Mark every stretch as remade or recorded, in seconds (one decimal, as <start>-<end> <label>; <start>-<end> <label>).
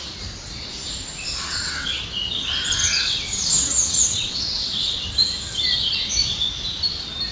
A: 0.0-1.4 recorded; 1.4-2.0 remade; 2.0-2.8 recorded; 2.8-5.1 remade; 5.1-7.3 recorded